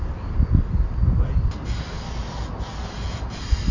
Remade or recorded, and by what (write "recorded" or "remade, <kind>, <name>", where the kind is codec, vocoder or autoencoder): recorded